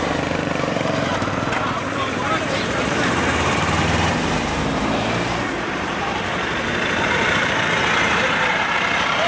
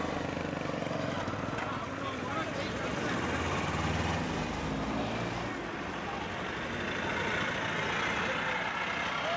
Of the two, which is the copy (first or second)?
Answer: first